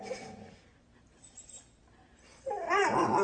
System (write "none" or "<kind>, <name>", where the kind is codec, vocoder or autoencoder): none